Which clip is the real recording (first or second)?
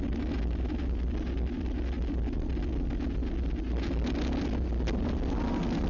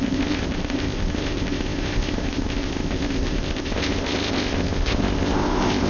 first